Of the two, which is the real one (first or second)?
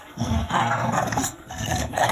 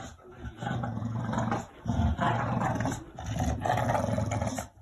second